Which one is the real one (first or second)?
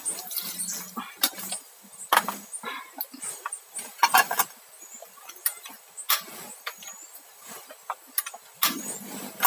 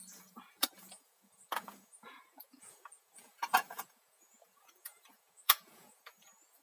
first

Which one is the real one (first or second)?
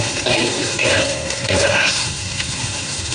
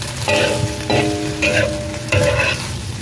second